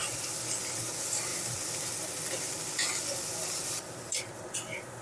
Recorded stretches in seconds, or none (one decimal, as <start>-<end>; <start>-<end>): 0.0-5.0